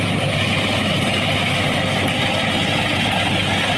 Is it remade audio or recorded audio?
recorded